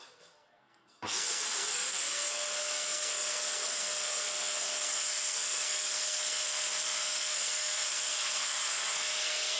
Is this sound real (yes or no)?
no